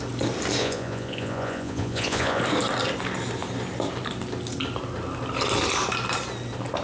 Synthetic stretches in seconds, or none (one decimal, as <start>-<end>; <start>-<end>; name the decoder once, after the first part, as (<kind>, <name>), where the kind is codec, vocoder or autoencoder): 0.6-2.4 (vocoder, Vocos)